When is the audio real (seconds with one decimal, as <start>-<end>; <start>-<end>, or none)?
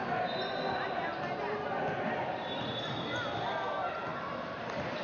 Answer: 0.0-4.1